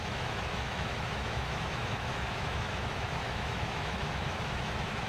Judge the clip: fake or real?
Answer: fake